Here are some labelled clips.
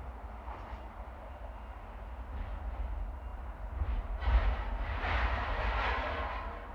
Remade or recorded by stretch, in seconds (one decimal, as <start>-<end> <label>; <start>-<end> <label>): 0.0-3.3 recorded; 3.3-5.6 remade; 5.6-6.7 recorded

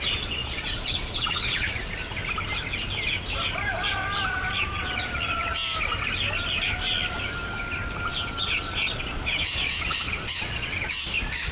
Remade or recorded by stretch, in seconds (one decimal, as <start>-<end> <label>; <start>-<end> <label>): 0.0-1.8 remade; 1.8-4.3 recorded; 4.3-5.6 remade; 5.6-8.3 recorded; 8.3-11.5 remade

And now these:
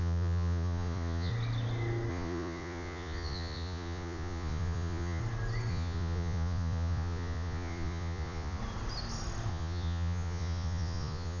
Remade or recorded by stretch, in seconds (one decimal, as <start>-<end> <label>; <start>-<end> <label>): 0.0-1.3 remade; 1.3-2.1 recorded; 2.1-5.2 remade; 5.2-5.7 recorded; 5.7-8.6 remade; 8.6-9.5 recorded; 9.5-11.4 remade

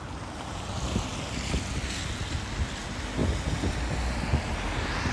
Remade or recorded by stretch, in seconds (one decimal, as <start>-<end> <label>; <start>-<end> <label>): 0.0-5.1 recorded

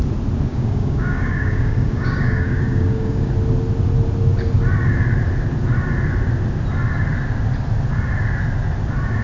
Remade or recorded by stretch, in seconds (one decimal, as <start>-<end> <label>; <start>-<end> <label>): 0.0-0.5 recorded; 0.5-3.3 remade; 3.3-9.2 recorded